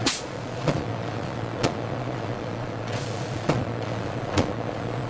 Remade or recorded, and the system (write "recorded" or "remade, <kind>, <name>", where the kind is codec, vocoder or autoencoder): remade, vocoder, Vocos